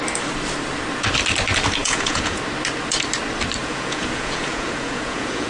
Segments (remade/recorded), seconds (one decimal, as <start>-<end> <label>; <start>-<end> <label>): 0.0-1.8 recorded; 1.8-2.4 remade; 2.4-3.6 recorded; 3.6-5.5 remade